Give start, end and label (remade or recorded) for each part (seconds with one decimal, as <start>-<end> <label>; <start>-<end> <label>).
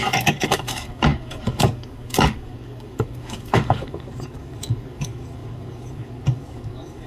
0.0-7.1 remade